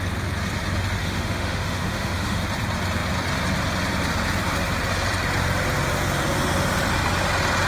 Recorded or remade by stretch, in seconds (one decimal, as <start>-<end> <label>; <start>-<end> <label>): 0.0-1.0 recorded; 1.0-2.4 remade; 2.4-7.7 recorded